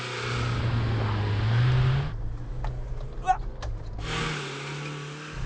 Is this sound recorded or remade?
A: recorded